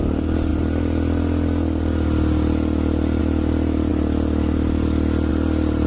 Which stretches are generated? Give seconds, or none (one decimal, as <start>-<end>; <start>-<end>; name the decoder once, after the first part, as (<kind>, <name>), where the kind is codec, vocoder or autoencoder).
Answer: none